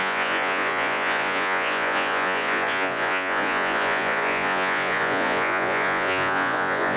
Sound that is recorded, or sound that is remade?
remade